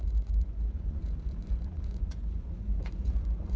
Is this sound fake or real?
fake